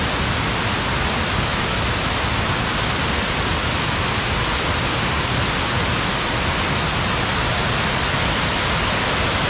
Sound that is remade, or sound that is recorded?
recorded